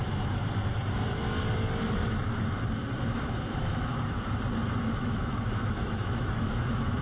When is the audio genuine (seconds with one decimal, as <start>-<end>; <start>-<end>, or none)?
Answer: 0.4-3.5; 3.9-5.0